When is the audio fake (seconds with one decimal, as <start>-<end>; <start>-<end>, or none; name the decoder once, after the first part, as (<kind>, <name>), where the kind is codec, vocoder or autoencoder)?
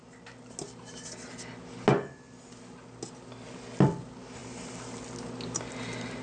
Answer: none